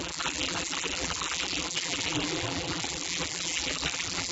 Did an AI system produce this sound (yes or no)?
yes